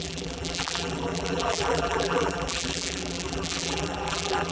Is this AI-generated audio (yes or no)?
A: yes